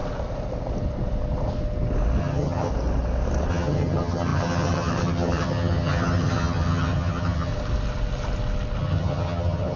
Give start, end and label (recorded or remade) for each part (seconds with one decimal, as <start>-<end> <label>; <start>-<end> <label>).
0.0-2.2 recorded; 2.2-2.7 remade; 2.7-3.5 recorded; 3.5-7.5 remade; 7.5-8.8 recorded; 8.8-9.8 remade